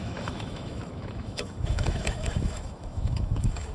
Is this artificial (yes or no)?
yes